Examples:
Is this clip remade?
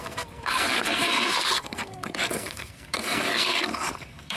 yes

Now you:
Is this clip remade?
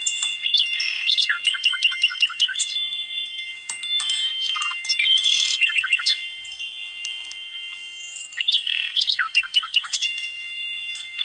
yes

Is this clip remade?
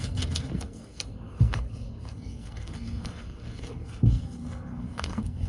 yes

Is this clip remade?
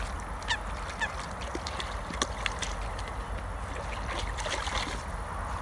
no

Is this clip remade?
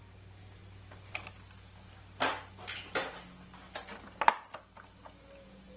no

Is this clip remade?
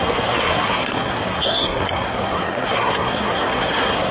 yes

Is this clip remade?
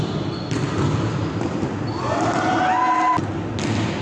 no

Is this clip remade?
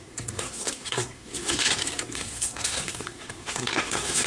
yes